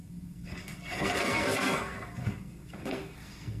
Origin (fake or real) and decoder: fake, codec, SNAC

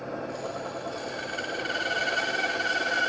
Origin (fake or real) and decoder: real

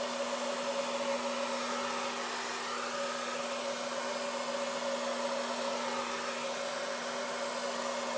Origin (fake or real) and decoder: real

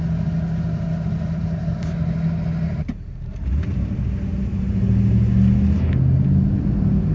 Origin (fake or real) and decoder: real